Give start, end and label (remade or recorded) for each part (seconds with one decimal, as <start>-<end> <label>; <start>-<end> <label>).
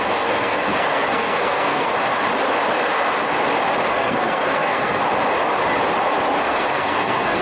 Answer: 0.0-1.9 remade; 1.9-3.9 recorded; 3.9-5.0 remade; 5.0-6.4 recorded; 6.4-7.4 remade